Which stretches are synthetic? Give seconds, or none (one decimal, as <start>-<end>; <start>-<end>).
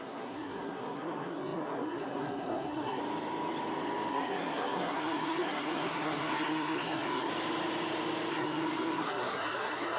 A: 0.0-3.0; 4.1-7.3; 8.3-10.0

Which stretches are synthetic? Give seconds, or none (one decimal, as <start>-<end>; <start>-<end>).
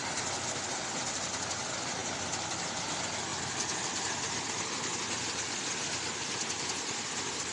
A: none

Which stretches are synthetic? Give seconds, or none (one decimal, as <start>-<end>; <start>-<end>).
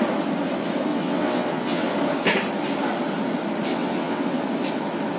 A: 0.9-1.9; 3.7-4.4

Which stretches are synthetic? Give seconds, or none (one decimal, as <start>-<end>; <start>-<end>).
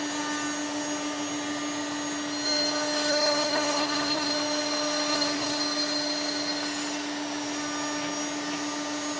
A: 3.1-4.3; 5.1-5.6